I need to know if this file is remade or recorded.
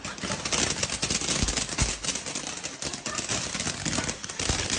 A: recorded